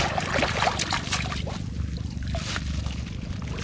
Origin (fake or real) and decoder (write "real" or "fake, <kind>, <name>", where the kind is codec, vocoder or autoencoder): real